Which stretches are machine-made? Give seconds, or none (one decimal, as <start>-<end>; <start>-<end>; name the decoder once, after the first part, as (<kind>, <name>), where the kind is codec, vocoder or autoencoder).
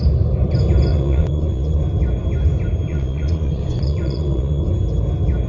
0.9-1.8 (vocoder, Vocos); 2.9-4.6